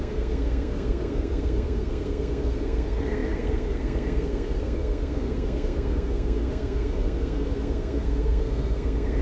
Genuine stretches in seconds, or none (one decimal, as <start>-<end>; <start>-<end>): none